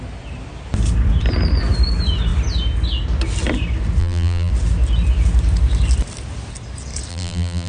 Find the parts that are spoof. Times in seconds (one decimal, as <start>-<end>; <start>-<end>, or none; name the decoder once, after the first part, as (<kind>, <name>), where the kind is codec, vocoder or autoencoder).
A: 4.0-4.5 (vocoder, BigVGAN v2); 7.1-7.7